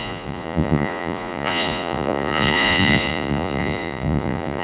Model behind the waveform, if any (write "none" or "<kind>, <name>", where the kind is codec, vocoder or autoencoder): vocoder, Vocos